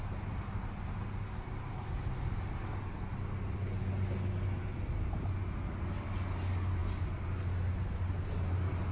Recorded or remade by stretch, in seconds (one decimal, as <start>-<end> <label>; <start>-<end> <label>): 0.0-8.9 recorded